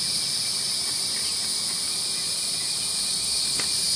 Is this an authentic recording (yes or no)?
yes